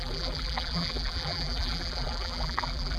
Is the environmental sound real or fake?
fake